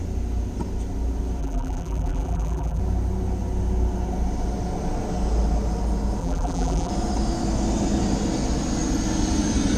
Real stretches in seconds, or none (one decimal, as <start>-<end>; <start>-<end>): 0.0-1.4; 2.8-6.2; 6.9-9.8